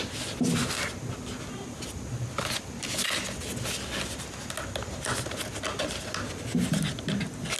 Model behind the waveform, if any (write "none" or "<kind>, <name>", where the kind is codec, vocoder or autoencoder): none